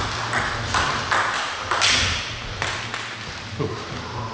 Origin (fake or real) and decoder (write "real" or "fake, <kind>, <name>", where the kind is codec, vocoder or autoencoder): real